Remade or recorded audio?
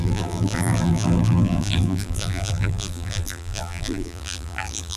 remade